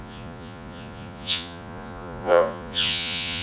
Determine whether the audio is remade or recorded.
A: remade